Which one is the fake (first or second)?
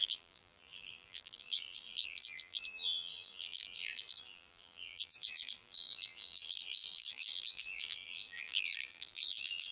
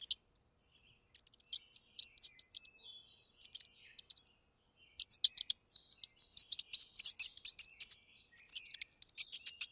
first